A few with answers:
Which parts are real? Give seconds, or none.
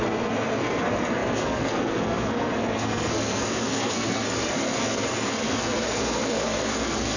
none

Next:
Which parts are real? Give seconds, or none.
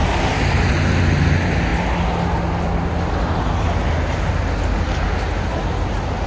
0.0-6.3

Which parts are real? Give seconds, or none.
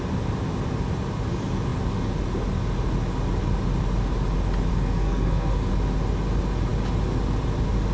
0.0-4.7; 5.7-7.9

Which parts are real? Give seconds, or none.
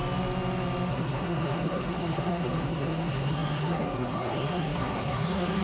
0.0-0.9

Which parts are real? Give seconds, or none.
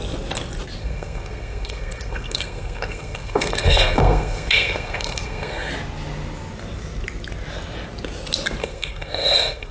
0.0-0.8; 5.7-8.6